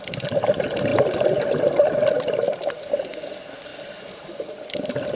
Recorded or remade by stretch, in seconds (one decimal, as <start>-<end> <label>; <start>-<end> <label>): 0.0-5.1 recorded